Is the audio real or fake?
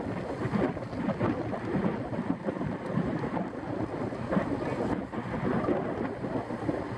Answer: real